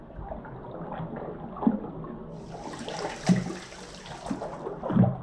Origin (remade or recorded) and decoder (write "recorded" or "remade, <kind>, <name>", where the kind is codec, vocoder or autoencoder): recorded